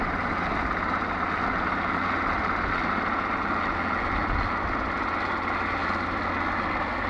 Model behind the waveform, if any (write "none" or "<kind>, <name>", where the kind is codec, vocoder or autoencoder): none